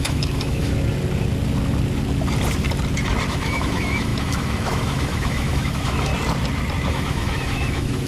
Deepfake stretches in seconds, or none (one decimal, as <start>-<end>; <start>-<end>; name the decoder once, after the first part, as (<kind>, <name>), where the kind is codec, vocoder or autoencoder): 0.0-0.7 (autoencoder, DAC-VAE); 3.3-6.1; 6.9-8.1